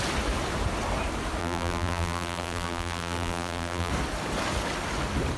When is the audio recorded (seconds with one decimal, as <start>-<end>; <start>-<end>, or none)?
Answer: 0.0-1.4; 3.9-5.4